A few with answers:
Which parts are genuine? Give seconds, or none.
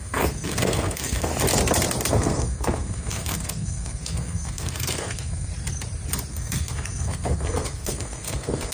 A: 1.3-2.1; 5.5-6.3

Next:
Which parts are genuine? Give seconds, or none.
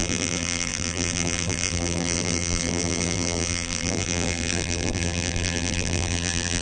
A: none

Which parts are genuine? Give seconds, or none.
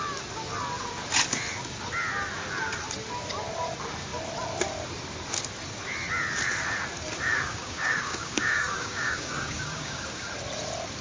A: 0.0-7.5; 10.3-11.0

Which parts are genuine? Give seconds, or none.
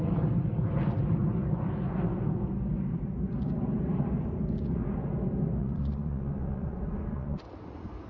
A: 0.0-5.6; 7.4-8.1